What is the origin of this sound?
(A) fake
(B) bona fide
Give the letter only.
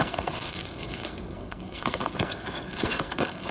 A